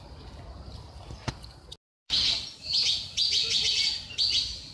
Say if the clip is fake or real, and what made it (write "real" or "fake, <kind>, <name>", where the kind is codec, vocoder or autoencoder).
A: real